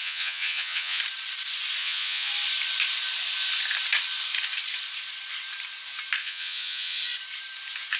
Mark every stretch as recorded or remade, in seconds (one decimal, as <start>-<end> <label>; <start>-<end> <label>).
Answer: 0.0-1.0 remade; 1.0-1.8 recorded; 1.8-2.3 remade; 2.3-6.2 recorded; 6.2-7.0 remade; 7.0-8.0 recorded